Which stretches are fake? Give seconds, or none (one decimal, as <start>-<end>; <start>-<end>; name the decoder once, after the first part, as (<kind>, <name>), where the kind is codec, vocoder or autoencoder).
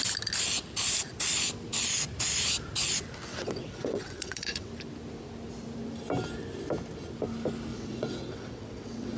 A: 3.3-4.7 (vocoder, WaveNeXt); 7.7-9.2